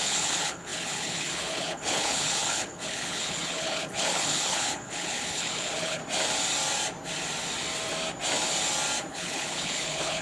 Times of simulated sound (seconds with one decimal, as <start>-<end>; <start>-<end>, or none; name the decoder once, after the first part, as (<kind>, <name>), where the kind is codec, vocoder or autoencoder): 0.0-6.0 (codec, HILCodec); 9.1-10.2